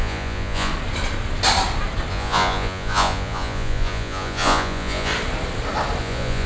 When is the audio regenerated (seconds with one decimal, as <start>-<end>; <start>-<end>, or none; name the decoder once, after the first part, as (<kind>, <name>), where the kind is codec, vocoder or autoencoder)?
0.0-0.7 (vocoder, Vocos); 2.1-5.1; 6.0-6.5